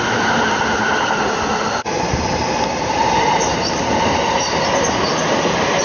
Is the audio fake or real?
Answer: fake